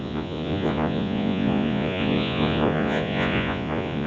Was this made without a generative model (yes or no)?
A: no